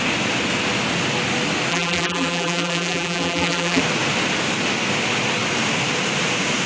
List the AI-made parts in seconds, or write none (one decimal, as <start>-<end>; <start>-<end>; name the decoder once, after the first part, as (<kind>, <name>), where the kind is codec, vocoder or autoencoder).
1.7-3.8 (vocoder, BigVGAN v2)